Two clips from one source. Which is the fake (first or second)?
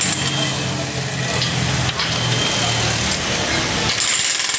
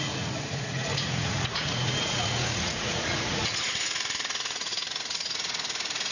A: second